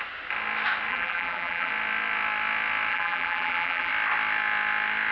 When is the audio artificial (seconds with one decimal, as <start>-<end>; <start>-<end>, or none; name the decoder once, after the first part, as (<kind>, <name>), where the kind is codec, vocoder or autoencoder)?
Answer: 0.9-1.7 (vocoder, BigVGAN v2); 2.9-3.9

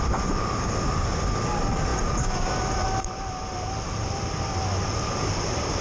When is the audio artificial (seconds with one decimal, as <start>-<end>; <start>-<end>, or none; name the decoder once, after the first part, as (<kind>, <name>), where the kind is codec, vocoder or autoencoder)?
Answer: 0.0-5.8 (vocoder, BigVGAN v2)

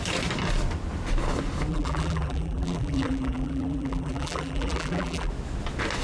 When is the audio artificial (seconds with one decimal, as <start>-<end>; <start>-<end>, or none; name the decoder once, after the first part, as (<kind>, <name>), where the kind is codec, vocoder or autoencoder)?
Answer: 1.7-5.3 (vocoder, BigVGAN v2)

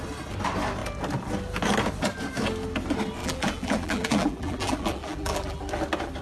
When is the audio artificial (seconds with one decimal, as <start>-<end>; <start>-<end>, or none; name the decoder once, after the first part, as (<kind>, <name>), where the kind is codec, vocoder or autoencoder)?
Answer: 3.2-5.6 (vocoder, BigVGAN v2)

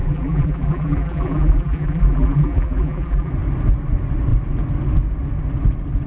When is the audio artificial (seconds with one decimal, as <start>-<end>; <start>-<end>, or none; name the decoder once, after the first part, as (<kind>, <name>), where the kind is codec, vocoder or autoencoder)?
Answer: 0.0-3.3 (vocoder, BigVGAN v2)